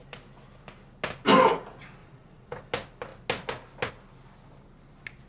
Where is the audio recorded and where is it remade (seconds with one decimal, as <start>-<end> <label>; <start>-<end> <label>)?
0.0-2.0 recorded; 2.0-2.6 remade; 2.6-5.3 recorded